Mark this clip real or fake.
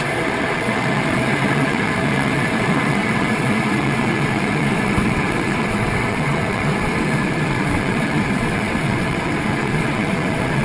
fake